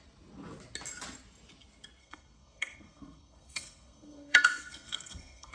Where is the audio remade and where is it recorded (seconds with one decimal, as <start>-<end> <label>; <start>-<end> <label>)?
0.0-2.0 recorded; 2.0-5.5 remade